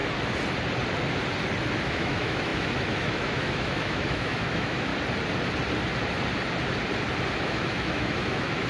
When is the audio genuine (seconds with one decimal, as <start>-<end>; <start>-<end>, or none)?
0.0-1.8; 4.9-7.3